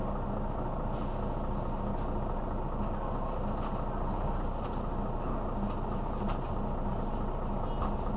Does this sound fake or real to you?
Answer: real